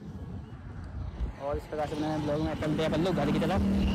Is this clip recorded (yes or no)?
yes